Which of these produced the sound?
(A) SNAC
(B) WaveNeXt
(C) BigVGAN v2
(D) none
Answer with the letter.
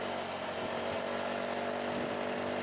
D